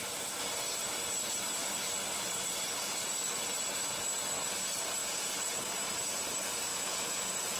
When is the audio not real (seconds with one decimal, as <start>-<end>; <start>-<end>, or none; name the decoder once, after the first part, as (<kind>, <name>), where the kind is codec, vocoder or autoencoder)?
5.0-5.6 (vocoder, Vocos); 6.7-7.6